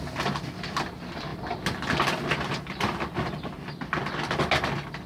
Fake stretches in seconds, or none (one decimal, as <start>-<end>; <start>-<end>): none